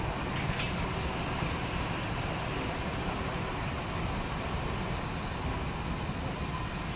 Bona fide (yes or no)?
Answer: yes